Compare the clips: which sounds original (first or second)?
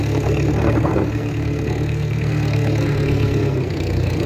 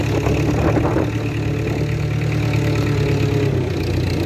second